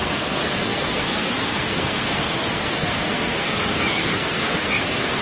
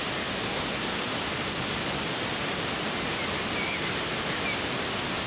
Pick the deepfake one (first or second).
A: first